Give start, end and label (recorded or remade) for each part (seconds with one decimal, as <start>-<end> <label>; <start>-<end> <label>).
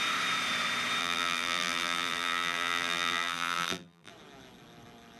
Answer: 0.0-1.0 recorded; 1.0-4.1 remade; 4.1-5.2 recorded